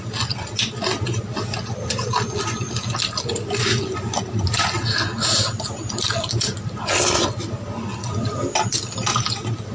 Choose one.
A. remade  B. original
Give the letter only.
B